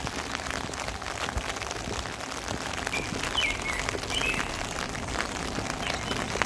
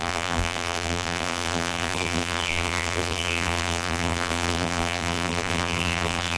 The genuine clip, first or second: first